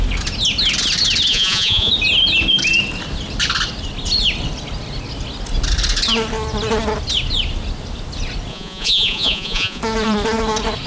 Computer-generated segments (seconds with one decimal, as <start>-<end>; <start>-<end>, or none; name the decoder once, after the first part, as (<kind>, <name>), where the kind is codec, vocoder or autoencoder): 1.3-1.9 (vocoder, Vocos); 8.5-9.8

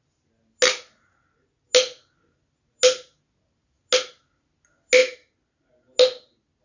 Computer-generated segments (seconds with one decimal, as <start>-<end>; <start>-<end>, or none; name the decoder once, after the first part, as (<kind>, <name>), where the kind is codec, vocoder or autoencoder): none

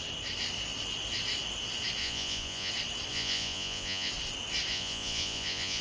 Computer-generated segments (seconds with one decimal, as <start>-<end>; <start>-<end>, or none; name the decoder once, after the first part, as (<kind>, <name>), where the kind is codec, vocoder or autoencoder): 2.0-2.7 (vocoder, Vocos); 3.1-4.1; 4.7-5.8

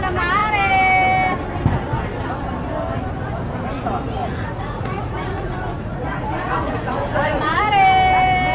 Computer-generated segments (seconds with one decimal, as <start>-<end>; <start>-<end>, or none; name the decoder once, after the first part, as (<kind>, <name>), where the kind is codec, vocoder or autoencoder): 4.2-7.6 (vocoder, Vocos)